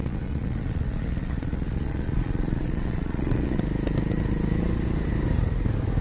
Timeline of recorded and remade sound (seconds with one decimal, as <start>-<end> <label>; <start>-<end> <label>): 0.0-3.6 remade; 3.6-6.0 recorded